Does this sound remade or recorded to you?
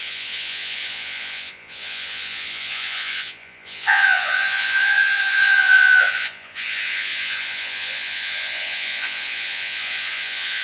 remade